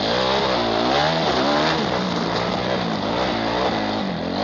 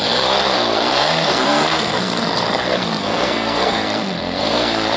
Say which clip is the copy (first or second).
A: second